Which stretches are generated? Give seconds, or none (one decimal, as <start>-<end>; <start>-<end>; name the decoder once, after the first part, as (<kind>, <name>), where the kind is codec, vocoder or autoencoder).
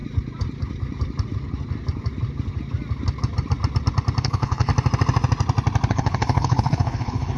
4.2-4.7 (codec, HILCodec); 5.9-7.4